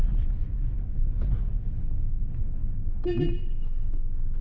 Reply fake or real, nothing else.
real